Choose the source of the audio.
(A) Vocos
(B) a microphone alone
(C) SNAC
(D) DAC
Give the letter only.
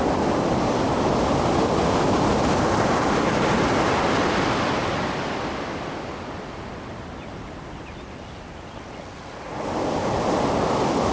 B